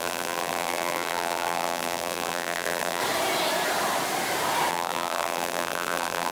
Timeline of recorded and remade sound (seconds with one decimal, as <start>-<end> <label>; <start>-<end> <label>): 0.0-3.0 remade; 3.0-4.7 recorded; 4.7-6.3 remade